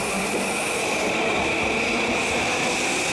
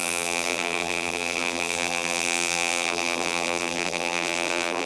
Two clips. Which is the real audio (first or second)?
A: first